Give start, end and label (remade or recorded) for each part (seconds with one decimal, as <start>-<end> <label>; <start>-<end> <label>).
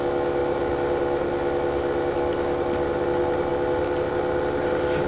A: 0.0-5.1 recorded